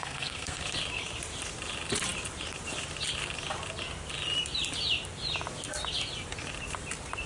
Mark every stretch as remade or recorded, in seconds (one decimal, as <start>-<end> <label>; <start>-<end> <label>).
0.0-0.6 remade; 0.6-7.3 recorded